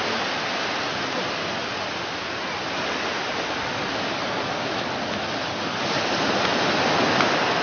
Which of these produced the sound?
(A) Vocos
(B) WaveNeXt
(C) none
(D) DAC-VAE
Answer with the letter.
C